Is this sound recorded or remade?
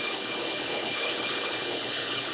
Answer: remade